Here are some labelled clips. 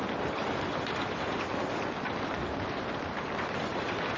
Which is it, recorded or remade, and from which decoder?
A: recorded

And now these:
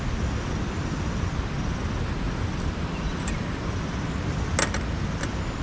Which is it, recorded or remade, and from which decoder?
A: recorded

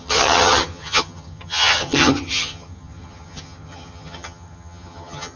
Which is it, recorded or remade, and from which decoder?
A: remade, vocoder, HiFi-GAN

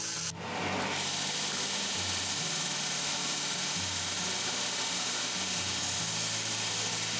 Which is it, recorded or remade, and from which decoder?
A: recorded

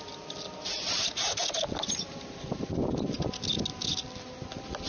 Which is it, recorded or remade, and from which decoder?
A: recorded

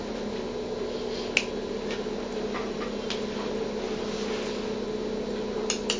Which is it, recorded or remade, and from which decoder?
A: recorded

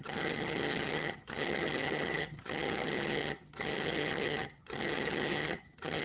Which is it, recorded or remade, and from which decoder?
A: remade, vocoder, HiFi-GAN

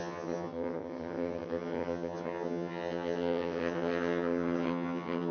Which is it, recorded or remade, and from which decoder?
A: remade, vocoder, HiFi-GAN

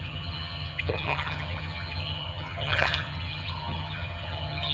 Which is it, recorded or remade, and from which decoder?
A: remade, vocoder, HiFi-GAN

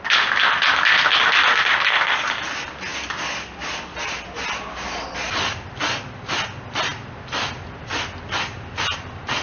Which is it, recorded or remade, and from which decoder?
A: recorded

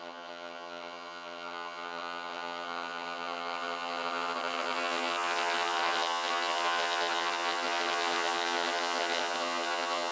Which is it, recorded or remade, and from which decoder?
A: remade, vocoder, HiFi-GAN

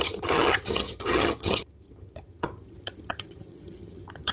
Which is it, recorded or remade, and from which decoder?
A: remade, vocoder, HiFi-GAN